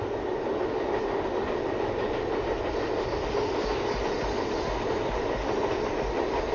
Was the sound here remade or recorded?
recorded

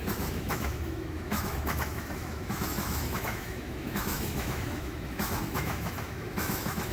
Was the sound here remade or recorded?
remade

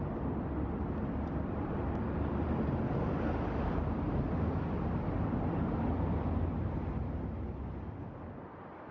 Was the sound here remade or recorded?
recorded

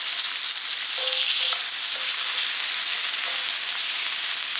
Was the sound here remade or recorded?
recorded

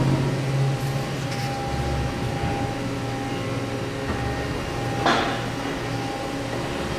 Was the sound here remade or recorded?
recorded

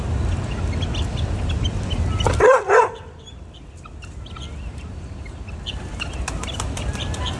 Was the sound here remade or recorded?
recorded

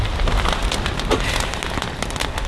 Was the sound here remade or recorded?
recorded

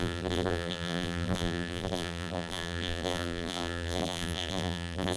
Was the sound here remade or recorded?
remade